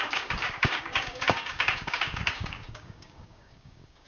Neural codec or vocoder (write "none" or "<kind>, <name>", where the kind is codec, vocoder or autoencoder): codec, DAC